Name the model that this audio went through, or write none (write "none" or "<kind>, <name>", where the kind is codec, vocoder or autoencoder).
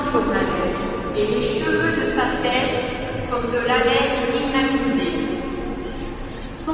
none